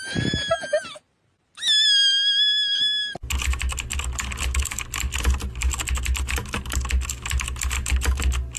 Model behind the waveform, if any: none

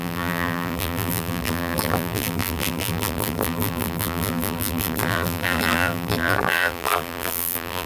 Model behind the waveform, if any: vocoder, BigVGAN v2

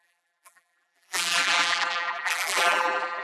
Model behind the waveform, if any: vocoder, BigVGAN v2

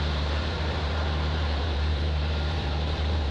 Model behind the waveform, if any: vocoder, BigVGAN v2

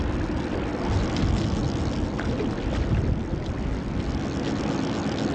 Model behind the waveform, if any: none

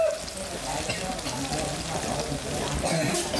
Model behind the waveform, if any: none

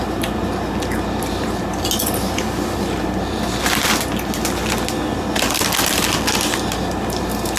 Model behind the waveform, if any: none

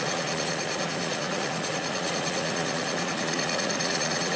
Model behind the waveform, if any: vocoder, Vocos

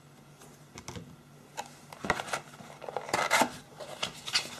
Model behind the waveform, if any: none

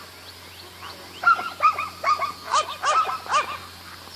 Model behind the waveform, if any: none